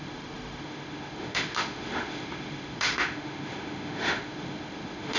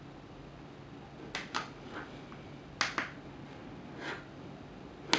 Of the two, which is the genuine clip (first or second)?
second